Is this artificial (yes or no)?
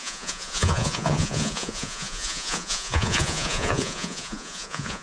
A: yes